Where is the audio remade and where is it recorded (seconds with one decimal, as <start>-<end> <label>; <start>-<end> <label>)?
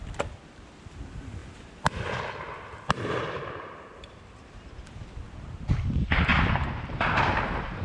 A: 0.0-6.3 recorded; 6.3-7.8 remade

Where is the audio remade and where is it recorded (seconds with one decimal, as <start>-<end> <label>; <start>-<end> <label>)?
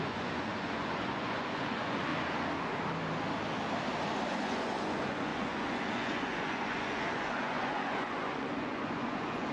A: 0.0-2.1 remade; 2.1-4.3 recorded; 4.3-9.5 remade